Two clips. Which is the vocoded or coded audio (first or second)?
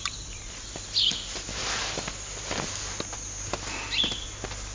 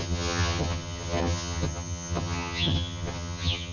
second